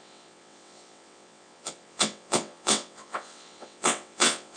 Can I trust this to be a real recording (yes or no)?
no